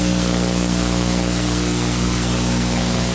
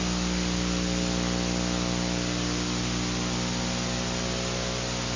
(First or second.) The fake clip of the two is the first